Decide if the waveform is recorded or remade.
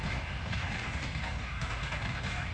remade